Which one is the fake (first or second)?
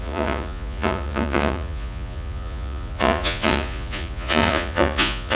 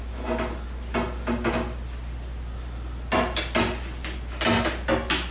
first